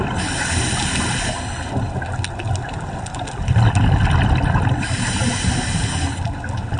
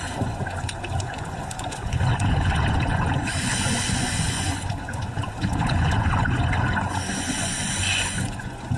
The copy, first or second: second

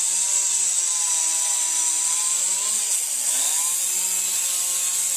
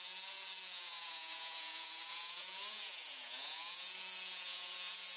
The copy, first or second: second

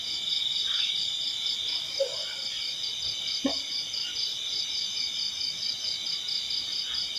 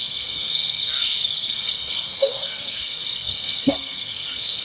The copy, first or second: second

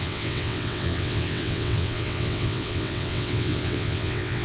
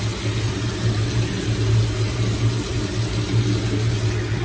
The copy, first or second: first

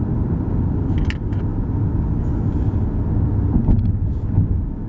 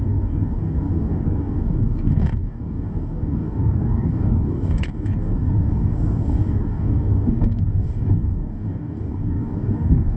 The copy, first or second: second